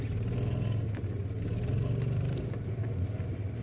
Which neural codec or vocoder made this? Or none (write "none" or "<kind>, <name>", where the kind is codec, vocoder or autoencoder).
none